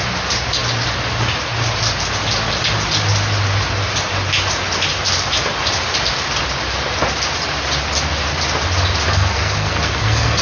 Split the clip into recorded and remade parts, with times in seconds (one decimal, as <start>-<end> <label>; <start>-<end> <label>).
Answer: 0.0-9.1 recorded; 9.1-10.4 remade

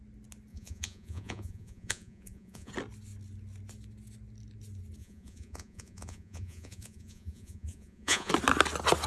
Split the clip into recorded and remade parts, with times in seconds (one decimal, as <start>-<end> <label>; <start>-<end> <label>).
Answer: 0.0-0.5 recorded; 0.5-2.7 remade; 2.7-5.0 recorded; 5.0-8.3 remade; 8.3-9.1 recorded

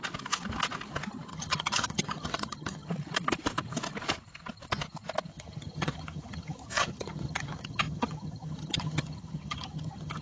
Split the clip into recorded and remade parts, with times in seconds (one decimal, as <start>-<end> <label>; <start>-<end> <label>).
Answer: 0.0-1.3 recorded; 1.3-2.9 remade; 2.9-5.3 recorded; 5.3-10.2 remade

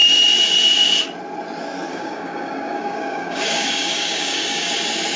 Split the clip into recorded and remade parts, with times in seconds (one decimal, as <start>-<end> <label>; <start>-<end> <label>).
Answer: 0.0-1.9 recorded; 1.9-4.7 remade; 4.7-5.2 recorded

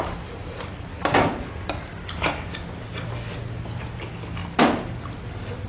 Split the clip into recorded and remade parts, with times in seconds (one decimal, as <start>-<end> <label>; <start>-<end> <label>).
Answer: 0.0-5.7 remade

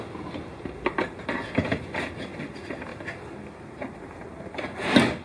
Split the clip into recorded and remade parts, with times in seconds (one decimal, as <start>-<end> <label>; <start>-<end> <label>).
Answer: 0.0-5.2 recorded

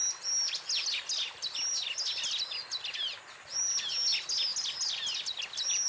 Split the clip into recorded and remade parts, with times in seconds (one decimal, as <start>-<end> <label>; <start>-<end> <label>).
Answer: 0.0-5.9 recorded